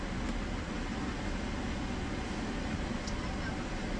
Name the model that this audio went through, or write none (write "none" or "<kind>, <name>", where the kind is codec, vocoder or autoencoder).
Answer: none